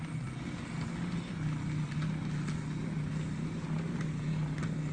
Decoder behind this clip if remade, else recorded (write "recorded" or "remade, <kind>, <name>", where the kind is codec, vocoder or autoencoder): recorded